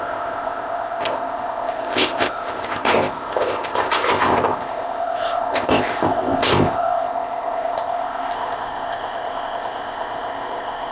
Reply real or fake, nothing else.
fake